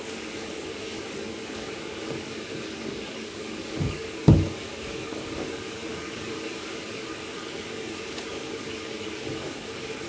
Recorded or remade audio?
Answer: remade